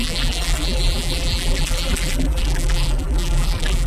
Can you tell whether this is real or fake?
fake